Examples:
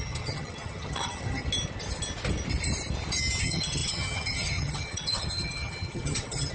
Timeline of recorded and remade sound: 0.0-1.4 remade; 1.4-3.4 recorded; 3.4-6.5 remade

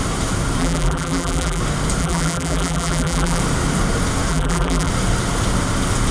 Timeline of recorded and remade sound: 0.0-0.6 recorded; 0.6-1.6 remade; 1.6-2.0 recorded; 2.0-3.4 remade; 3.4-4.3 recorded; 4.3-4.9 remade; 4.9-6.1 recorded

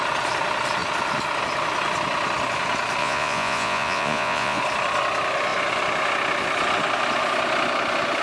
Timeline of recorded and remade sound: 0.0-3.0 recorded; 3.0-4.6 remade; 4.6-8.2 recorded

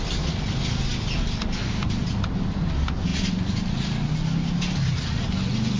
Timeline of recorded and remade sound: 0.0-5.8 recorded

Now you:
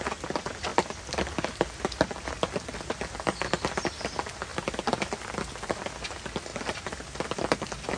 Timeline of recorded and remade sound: 0.0-8.0 recorded

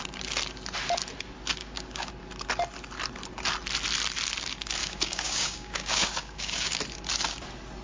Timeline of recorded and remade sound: 0.0-1.6 recorded; 1.6-2.1 remade; 2.1-4.8 recorded; 4.8-6.8 remade; 6.8-7.8 recorded

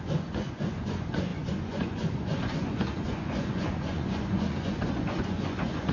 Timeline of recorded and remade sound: 0.0-5.9 remade

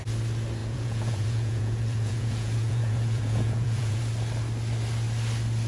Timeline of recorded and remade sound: 0.0-0.6 recorded; 0.6-4.0 remade; 4.0-5.7 recorded